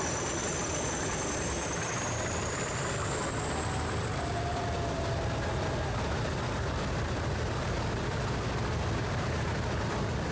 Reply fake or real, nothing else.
fake